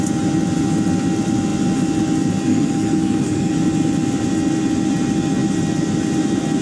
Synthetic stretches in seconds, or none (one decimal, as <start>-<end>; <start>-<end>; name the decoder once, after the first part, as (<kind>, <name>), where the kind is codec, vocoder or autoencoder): 2.5-3.5 (codec, SNAC)